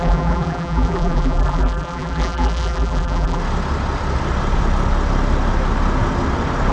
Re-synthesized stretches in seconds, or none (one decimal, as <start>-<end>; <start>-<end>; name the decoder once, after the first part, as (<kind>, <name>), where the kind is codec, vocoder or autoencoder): 0.0-3.4 (vocoder, BigVGAN v2)